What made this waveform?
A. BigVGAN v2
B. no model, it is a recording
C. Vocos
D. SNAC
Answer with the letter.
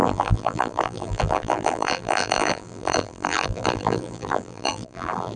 A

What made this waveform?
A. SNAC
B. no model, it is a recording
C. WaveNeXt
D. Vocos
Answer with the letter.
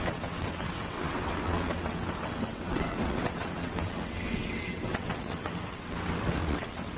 C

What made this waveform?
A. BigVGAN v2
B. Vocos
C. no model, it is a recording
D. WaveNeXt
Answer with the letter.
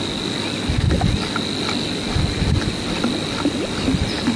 C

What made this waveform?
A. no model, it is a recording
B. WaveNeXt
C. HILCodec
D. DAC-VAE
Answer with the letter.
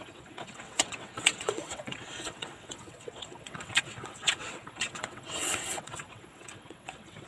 B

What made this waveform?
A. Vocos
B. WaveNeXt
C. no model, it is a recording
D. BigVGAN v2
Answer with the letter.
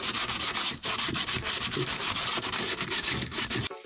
D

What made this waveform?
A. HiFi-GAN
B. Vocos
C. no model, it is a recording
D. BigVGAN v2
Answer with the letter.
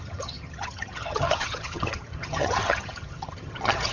A